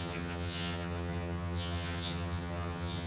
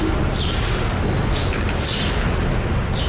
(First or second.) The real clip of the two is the second